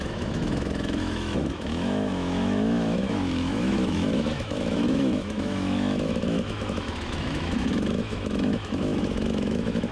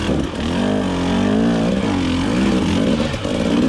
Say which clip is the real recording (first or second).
second